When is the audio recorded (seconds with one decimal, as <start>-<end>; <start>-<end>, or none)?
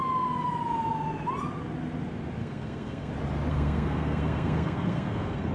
0.0-2.4; 3.1-3.5